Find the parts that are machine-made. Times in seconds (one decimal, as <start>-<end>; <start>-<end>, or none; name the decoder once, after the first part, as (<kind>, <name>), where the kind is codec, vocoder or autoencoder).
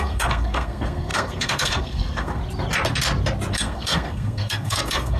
0.0-2.4 (codec, SNAC); 3.5-5.2